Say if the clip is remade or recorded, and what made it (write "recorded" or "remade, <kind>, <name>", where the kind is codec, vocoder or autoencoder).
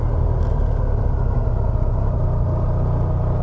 recorded